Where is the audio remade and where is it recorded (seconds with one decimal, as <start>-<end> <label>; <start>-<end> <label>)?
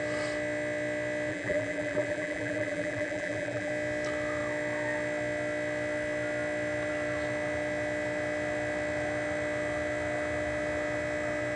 0.0-1.3 recorded; 1.3-3.7 remade; 3.7-11.6 recorded